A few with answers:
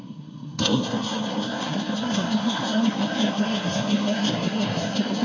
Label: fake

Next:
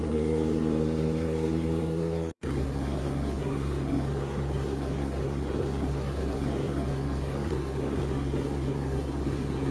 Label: fake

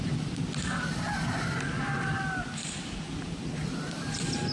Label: real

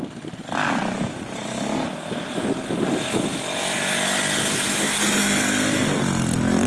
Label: real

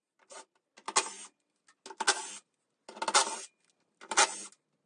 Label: real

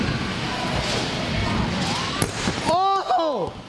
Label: real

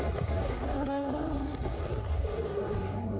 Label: fake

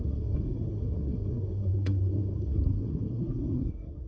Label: fake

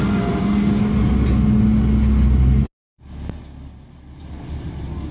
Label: real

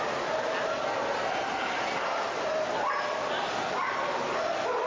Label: real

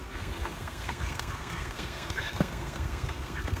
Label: fake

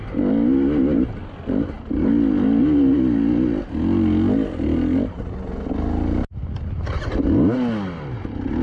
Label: real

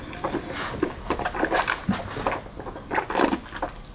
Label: real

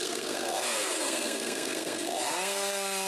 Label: fake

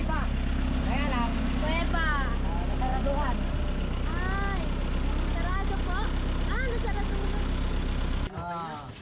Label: real